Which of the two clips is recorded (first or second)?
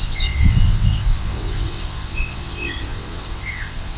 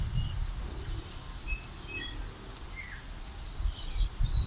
second